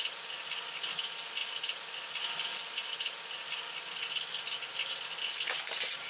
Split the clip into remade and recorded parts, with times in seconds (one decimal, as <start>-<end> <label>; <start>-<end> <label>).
0.0-6.1 recorded